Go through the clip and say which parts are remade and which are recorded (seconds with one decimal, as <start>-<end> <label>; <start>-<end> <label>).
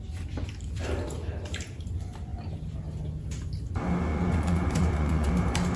0.0-4.1 recorded; 4.1-5.3 remade; 5.3-5.8 recorded